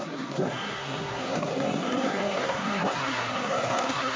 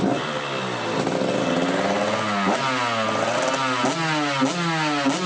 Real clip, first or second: second